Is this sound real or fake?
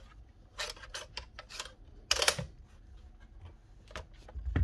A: real